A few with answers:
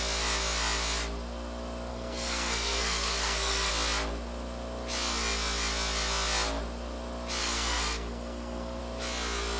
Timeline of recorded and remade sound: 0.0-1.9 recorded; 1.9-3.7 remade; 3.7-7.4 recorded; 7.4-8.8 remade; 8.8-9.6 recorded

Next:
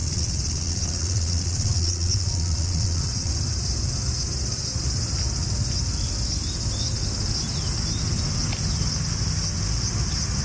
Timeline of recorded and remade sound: 0.0-3.3 remade; 3.3-10.4 recorded

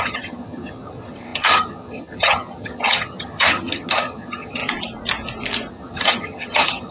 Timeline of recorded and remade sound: 0.0-4.6 remade; 4.6-5.7 recorded; 5.7-6.9 remade

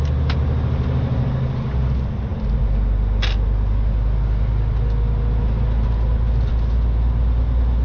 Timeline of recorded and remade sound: 0.0-7.8 recorded

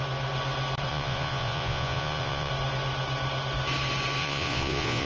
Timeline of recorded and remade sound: 0.0-0.9 recorded; 0.9-2.5 remade; 2.5-4.2 recorded; 4.2-5.1 remade

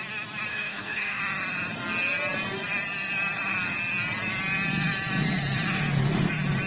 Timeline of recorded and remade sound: 0.0-0.5 recorded; 0.5-1.2 remade; 1.2-6.7 recorded

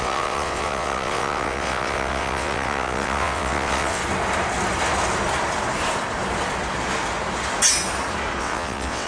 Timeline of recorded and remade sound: 0.0-4.0 remade; 4.0-8.4 recorded; 8.4-9.1 remade

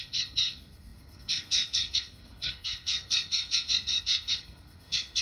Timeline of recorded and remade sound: 0.0-5.2 remade